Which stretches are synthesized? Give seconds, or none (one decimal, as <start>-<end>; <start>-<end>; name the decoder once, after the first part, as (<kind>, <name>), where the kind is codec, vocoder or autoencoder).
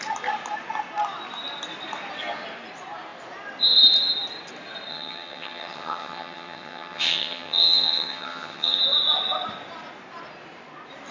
4.9-8.8 (vocoder, HiFi-GAN)